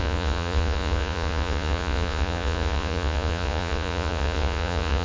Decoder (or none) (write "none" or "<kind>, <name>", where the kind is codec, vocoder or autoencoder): vocoder, Vocos